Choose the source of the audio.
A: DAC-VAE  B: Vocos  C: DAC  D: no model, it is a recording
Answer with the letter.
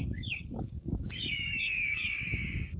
C